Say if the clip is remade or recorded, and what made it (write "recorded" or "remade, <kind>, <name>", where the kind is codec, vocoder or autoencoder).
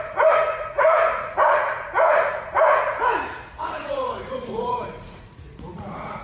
remade, vocoder, Vocos